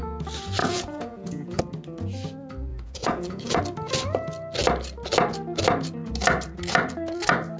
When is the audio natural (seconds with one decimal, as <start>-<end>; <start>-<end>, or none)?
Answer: 0.0-0.6; 1.6-2.7; 3.6-7.6